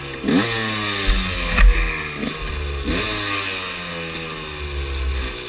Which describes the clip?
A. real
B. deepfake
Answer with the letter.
A